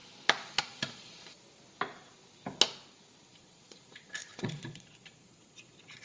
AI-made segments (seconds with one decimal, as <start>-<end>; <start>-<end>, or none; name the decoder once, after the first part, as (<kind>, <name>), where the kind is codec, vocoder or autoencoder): 0.6-1.4 (vocoder, Vocos); 3.3-6.0